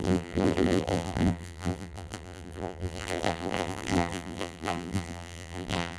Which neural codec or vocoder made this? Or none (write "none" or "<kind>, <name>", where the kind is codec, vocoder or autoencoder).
vocoder, BigVGAN v2